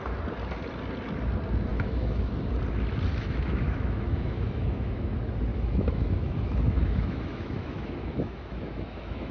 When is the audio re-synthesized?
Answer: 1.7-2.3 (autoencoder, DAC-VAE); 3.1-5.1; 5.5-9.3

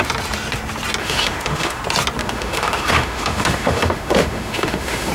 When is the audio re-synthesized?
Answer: 1.0-1.8 (autoencoder, DAC-VAE); 2.2-5.1

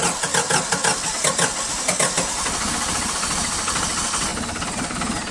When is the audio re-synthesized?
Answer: none

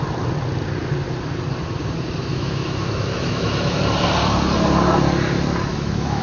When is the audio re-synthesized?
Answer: 2.3-3.8 (autoencoder, DAC-VAE); 5.7-6.2

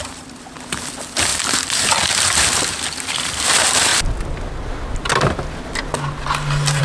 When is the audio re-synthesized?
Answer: none

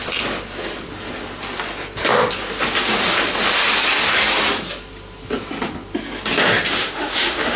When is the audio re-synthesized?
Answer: 6.8-7.6 (autoencoder, DAC-VAE)

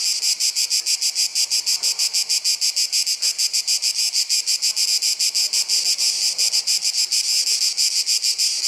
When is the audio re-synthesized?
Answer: none